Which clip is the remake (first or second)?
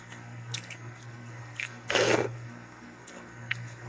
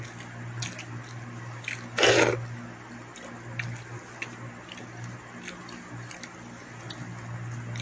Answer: first